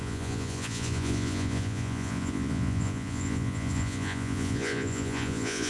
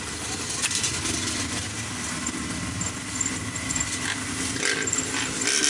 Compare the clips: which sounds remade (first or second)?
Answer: first